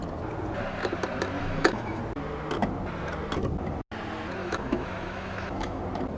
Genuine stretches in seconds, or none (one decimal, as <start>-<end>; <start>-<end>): 0.0-1.4; 2.0-4.4; 5.8-6.2